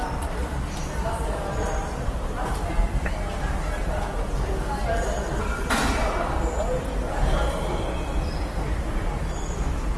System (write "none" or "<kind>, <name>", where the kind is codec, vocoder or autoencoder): none